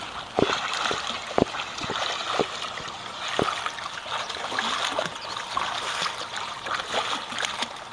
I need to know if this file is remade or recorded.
recorded